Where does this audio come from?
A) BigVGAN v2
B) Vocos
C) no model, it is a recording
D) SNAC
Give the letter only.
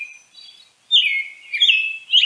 C